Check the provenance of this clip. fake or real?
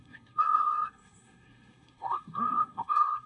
fake